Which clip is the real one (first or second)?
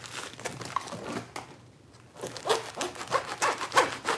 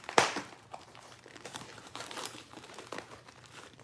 first